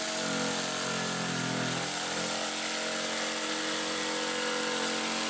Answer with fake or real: real